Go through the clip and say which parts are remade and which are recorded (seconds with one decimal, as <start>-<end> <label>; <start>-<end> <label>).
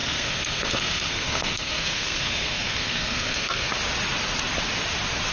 0.0-3.7 remade; 3.7-5.3 recorded